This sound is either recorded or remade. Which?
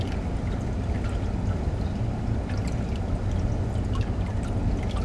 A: recorded